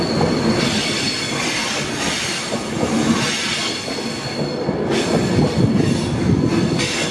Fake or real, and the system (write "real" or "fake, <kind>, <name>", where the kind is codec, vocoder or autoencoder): real